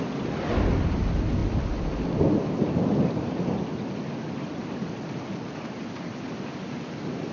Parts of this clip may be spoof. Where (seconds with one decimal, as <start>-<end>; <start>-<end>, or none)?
none